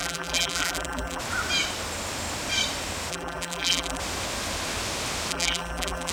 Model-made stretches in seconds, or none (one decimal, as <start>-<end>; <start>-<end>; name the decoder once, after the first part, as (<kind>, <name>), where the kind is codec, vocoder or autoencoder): 0.0-1.2 (vocoder, BigVGAN v2); 3.1-4.0; 5.3-6.1